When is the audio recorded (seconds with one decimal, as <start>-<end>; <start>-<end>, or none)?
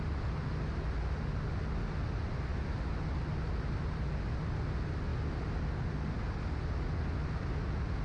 0.0-2.5; 3.1-8.0